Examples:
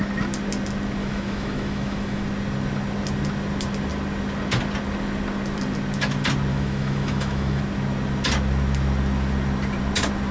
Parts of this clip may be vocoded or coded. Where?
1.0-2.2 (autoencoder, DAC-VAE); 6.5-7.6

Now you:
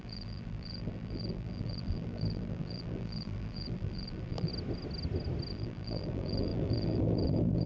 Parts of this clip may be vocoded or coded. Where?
0.0-4.5 (vocoder, BigVGAN v2); 5.5-7.7

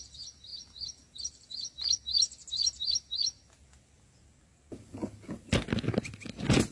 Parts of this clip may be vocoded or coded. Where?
none

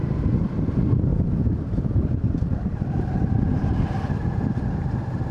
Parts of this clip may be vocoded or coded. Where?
none

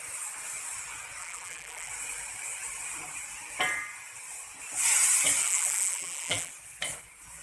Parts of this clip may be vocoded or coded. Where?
1.2-1.9 (vocoder, BigVGAN v2); 5.4-6.5

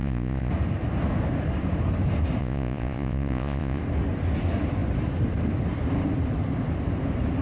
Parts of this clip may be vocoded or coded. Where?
0.0-0.5 (vocoder, Vocos); 2.4-3.8